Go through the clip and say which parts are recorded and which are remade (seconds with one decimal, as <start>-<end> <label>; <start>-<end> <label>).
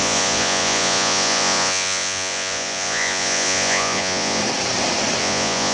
0.0-4.4 remade; 4.4-5.2 recorded; 5.2-5.7 remade